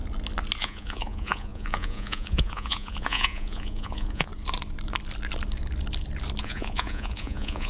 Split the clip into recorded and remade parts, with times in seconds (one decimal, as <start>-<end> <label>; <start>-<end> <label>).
0.0-0.6 recorded; 0.6-4.3 remade; 4.3-6.4 recorded; 6.4-7.7 remade